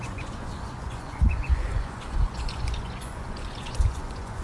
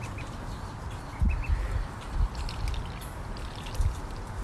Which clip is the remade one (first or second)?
first